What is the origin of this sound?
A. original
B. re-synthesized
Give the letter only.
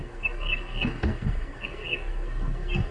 B